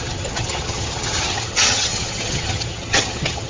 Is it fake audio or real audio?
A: fake